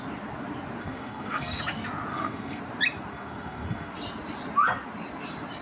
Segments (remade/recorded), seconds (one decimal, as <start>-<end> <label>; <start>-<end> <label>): 0.0-0.8 recorded; 0.8-1.6 remade; 1.6-2.1 recorded; 2.1-2.6 remade; 2.6-3.1 recorded; 3.1-3.9 remade; 3.9-5.6 recorded